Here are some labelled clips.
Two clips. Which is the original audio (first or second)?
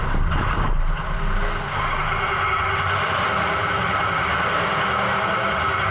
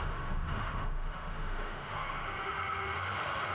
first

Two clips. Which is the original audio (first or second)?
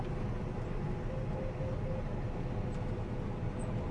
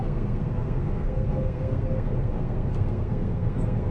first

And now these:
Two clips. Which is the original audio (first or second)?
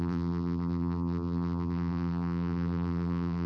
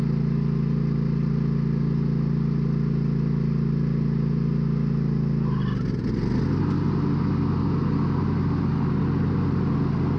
second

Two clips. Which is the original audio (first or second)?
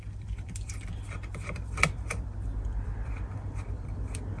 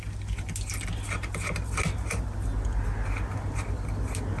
second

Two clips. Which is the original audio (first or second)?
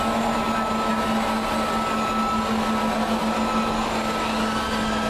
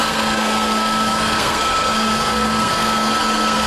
first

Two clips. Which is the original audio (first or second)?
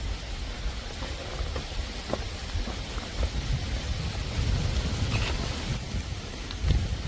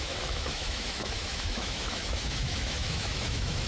first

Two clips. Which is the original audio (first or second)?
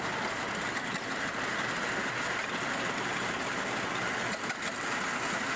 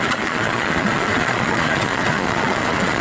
first